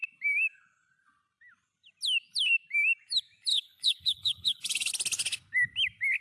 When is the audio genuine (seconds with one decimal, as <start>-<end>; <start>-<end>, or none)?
0.0-3.5; 4.9-6.2